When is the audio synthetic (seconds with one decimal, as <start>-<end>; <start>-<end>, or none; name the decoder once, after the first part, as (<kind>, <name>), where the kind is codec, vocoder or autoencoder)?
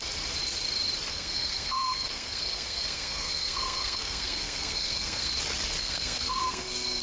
1.1-5.3 (codec, SNAC); 5.8-7.0